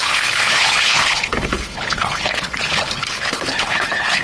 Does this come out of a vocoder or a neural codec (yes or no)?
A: yes